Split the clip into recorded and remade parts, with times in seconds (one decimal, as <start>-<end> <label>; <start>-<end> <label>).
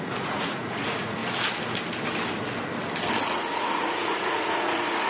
0.0-1.2 remade; 1.2-3.2 recorded; 3.2-5.1 remade